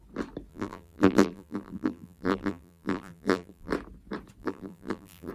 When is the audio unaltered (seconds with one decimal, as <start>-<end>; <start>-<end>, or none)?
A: 0.0-0.5; 3.7-4.4